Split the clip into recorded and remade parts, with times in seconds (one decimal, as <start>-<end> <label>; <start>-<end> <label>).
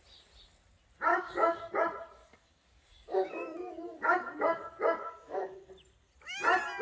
0.0-1.1 recorded; 1.1-1.7 remade; 1.7-2.2 recorded; 2.2-5.7 remade; 5.7-6.8 recorded